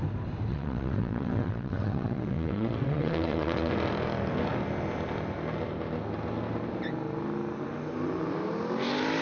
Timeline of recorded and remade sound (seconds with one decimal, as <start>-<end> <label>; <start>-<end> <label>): 0.0-0.5 recorded; 0.5-3.7 remade; 3.7-9.2 recorded